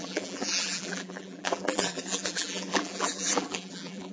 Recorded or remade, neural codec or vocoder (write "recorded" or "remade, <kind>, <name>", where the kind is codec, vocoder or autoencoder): remade, vocoder, BigVGAN v2